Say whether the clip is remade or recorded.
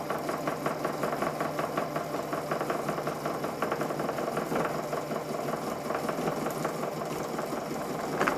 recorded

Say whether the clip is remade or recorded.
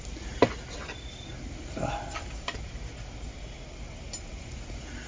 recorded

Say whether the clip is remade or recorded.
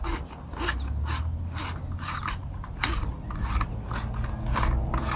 recorded